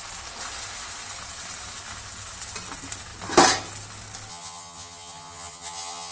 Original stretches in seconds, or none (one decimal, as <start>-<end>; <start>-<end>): 0.0-4.3